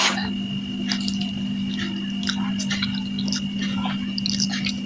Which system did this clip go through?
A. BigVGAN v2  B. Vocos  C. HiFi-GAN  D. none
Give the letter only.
D